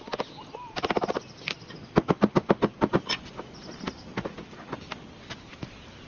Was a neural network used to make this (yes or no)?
no